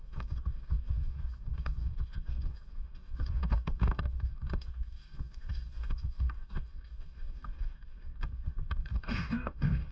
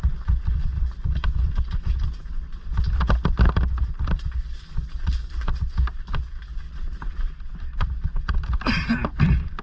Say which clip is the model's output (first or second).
first